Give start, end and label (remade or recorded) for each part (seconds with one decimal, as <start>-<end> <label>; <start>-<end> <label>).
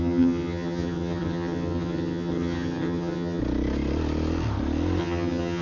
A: 0.0-3.4 remade; 3.4-5.0 recorded; 5.0-5.6 remade